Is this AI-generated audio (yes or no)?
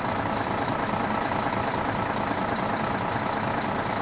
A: yes